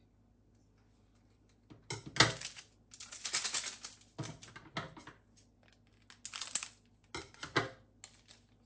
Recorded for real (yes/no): yes